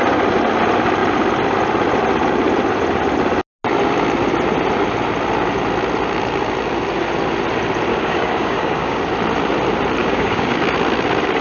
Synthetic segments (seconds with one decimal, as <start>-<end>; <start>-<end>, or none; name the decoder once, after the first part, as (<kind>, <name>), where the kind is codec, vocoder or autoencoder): 7.9-9.0 (codec, DAC); 10.0-10.6